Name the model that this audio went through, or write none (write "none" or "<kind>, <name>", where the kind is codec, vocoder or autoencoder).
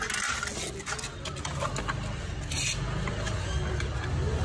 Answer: none